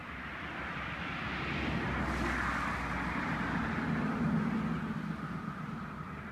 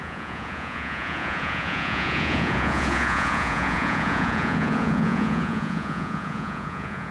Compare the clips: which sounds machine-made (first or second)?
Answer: second